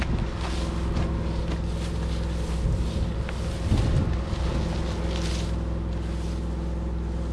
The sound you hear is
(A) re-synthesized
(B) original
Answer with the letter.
B